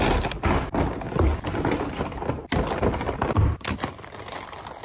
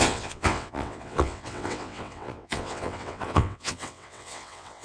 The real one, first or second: first